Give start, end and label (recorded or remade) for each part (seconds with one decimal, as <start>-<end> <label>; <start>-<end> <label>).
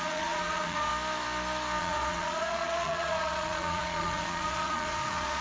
0.0-0.9 remade; 0.9-1.8 recorded; 1.8-5.4 remade